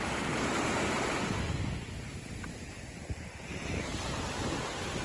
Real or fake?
real